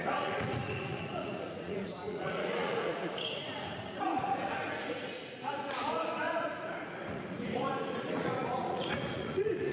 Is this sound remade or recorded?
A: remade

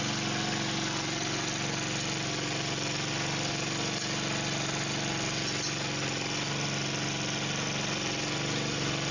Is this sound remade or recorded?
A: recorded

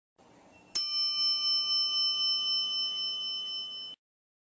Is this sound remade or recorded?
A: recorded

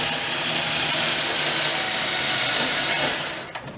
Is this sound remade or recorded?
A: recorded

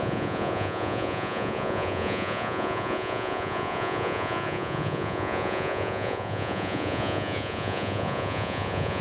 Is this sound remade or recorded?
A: remade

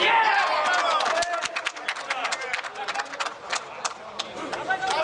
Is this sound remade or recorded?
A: recorded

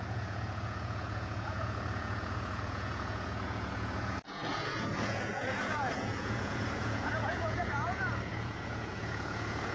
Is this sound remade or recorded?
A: remade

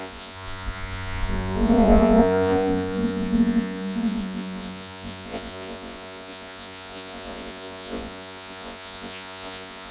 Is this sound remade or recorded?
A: remade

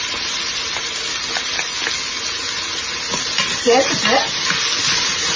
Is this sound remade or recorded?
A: recorded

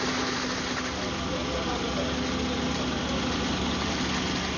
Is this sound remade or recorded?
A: recorded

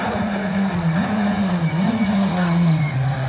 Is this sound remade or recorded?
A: remade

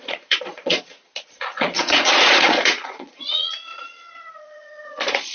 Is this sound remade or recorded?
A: remade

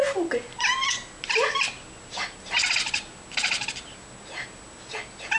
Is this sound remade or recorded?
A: recorded